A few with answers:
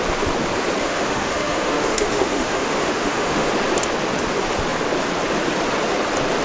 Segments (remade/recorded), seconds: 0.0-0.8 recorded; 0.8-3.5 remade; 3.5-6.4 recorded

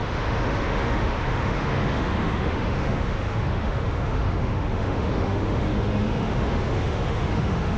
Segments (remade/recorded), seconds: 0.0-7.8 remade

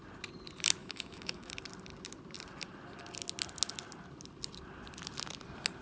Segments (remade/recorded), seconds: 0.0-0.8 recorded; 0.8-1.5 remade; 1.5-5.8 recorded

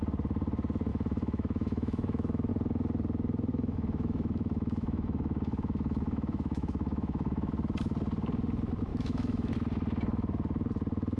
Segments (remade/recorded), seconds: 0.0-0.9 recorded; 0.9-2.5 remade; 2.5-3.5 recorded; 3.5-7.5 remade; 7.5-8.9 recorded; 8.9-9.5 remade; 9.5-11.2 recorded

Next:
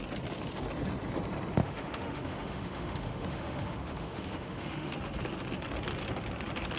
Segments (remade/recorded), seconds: 0.0-1.6 recorded; 1.6-4.9 remade; 4.9-6.8 recorded

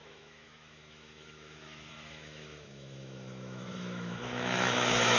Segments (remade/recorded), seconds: 0.0-5.2 remade

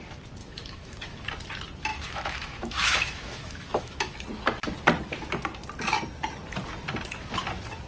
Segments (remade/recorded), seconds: 0.0-0.4 recorded; 0.4-1.3 remade; 1.3-1.9 recorded; 1.9-4.1 remade; 4.1-7.9 recorded